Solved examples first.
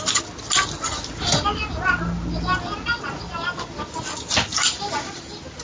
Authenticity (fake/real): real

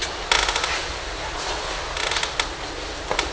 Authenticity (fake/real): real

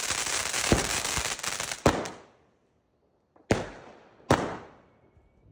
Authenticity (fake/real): real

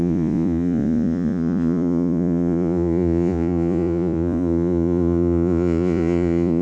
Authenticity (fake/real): fake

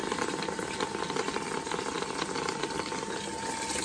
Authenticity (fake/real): real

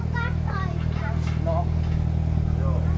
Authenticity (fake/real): real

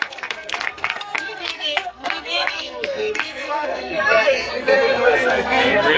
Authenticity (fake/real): fake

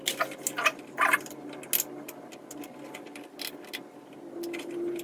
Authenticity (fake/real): real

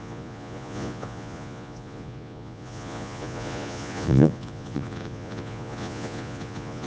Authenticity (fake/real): fake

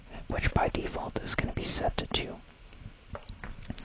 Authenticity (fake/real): real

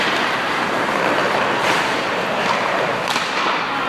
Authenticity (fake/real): real